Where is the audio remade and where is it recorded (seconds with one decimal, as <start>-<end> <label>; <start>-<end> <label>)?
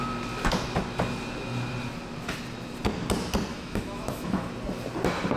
0.0-3.5 recorded; 3.5-4.5 remade; 4.5-5.4 recorded